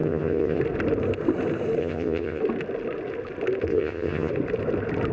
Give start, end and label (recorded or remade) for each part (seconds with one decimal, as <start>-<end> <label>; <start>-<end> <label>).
0.0-0.6 remade; 0.6-1.8 recorded; 1.8-2.4 remade; 2.4-3.7 recorded; 3.7-4.3 remade; 4.3-5.1 recorded